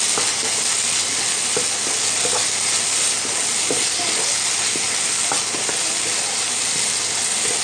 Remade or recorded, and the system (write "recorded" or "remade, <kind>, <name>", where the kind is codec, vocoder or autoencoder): recorded